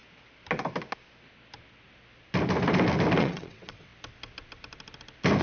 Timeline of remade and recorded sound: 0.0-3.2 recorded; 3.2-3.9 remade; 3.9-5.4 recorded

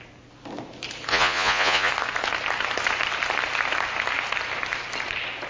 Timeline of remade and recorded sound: 0.0-1.1 recorded; 1.1-1.9 remade; 1.9-5.5 recorded

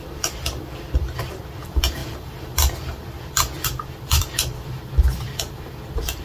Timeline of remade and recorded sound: 0.0-6.2 remade

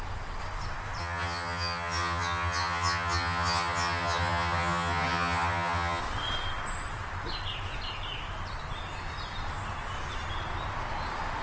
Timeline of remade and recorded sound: 0.0-1.0 recorded; 1.0-6.0 remade; 6.0-11.4 recorded

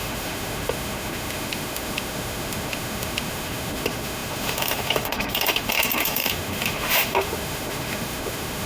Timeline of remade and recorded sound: 0.0-8.7 remade

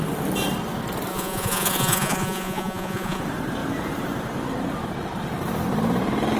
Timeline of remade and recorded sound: 0.0-1.1 recorded; 1.1-3.2 remade; 3.2-6.4 recorded